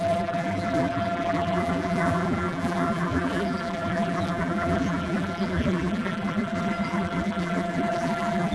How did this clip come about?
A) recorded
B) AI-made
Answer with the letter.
B